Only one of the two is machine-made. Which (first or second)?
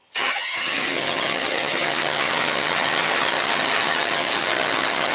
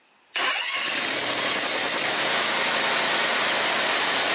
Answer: first